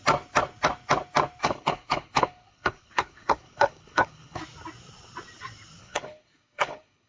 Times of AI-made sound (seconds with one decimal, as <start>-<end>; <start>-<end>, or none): 1.4-4.4; 5.8-7.1